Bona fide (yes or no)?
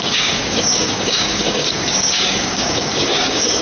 no